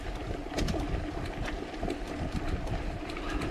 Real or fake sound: real